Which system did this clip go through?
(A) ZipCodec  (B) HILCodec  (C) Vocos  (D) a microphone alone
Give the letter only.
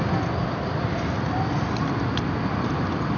D